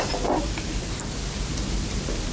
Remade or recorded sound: recorded